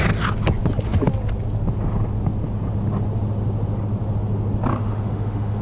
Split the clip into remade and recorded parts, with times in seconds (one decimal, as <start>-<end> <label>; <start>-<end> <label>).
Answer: 0.0-4.7 recorded; 4.7-5.6 remade